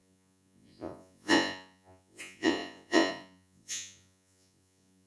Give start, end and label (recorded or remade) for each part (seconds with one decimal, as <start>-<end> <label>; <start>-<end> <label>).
0.0-5.1 remade